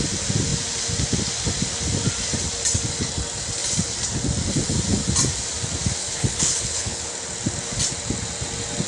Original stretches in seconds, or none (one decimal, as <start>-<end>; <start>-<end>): 0.0-6.0; 7.1-8.9